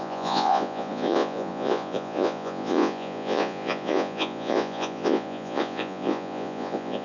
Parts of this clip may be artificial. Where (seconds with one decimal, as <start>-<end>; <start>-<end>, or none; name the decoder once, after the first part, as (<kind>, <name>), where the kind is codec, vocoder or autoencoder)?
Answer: 0.0-7.0 (vocoder, Vocos)

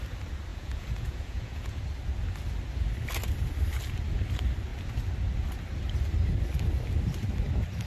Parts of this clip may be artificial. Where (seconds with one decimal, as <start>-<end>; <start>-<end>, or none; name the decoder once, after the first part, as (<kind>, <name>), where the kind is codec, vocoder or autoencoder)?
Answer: 0.5-1.8 (vocoder, Vocos)

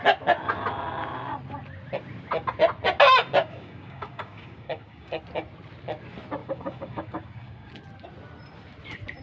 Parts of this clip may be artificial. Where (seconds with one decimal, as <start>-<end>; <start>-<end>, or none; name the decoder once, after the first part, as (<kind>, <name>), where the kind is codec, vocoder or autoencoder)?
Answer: 3.4-5.2 (codec, DAC); 6.4-7.7

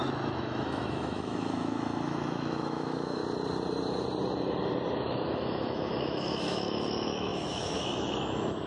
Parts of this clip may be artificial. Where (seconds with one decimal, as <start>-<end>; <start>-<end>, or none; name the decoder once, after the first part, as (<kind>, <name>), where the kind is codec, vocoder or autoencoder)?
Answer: 0.0-3.2 (autoencoder, DAC-VAE); 4.9-8.7

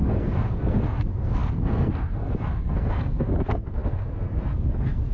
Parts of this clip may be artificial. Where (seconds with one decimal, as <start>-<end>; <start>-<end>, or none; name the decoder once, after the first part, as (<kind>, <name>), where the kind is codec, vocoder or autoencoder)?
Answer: 0.0-5.1 (codec, SNAC)